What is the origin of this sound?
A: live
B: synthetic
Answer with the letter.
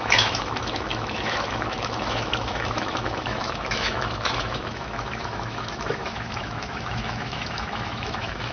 B